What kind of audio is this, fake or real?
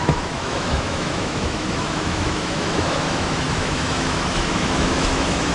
fake